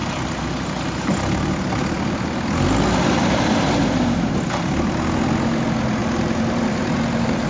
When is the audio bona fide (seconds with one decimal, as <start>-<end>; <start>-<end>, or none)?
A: 0.0-6.0